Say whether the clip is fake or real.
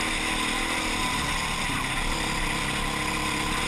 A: real